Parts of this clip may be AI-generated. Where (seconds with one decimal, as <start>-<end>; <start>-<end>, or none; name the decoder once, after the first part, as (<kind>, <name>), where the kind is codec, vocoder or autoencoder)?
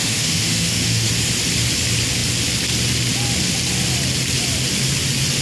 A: 0.0-1.1 (autoencoder, DAC-VAE)